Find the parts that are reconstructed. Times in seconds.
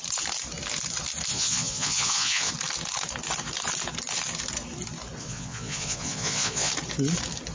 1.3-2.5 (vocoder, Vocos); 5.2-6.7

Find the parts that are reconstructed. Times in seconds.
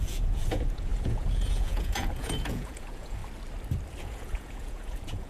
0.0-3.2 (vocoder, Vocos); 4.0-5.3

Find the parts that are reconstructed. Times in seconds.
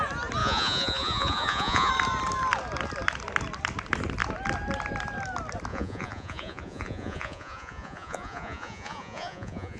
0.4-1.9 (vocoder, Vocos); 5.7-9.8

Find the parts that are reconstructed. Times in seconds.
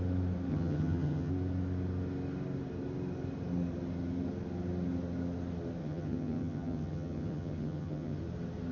0.5-1.3 (vocoder, HiFi-GAN); 5.8-8.2